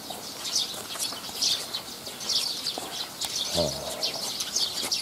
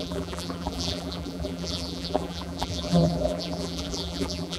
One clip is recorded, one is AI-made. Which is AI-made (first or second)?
second